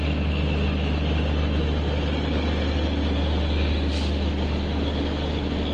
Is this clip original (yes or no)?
yes